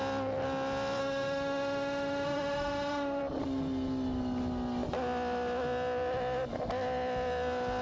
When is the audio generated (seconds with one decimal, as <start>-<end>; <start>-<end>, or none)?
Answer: 1.0-3.2